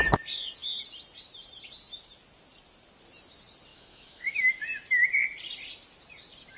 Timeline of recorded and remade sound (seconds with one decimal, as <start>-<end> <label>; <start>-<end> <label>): 0.0-3.7 recorded; 3.7-4.6 remade; 4.6-6.6 recorded

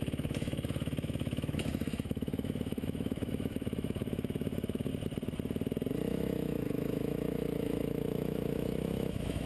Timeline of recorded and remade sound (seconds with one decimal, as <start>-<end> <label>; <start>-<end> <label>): 0.0-4.9 remade; 4.9-6.1 recorded; 6.1-9.5 remade

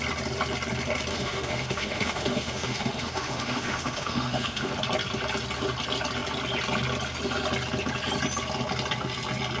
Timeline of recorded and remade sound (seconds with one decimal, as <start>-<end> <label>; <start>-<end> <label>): 0.0-1.1 recorded; 1.1-4.7 remade; 4.7-9.6 recorded

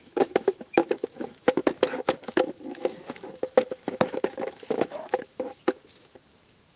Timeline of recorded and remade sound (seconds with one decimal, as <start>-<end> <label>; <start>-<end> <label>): 0.0-6.8 remade

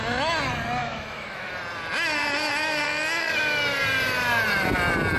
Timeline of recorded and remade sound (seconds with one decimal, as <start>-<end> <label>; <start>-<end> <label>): 0.0-0.8 recorded; 0.8-1.5 remade; 1.5-5.2 recorded

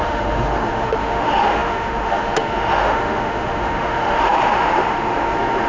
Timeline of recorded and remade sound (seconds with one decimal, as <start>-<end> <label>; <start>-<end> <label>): 0.0-5.7 remade

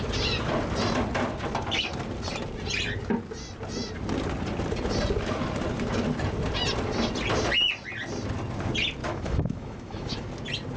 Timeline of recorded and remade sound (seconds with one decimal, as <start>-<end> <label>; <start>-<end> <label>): 0.0-9.0 recorded; 9.0-10.3 remade; 10.3-10.8 recorded

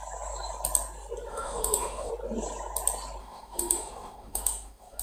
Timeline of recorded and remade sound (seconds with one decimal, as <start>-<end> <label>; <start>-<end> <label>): 0.0-1.3 recorded; 1.3-2.1 remade; 2.1-3.2 recorded; 3.2-5.0 remade